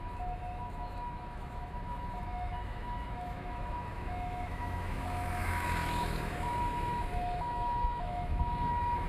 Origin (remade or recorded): remade